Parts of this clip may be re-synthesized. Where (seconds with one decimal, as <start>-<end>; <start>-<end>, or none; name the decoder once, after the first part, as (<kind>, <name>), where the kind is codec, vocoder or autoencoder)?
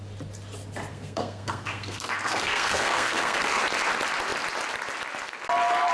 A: 0.9-3.6 (codec, SNAC)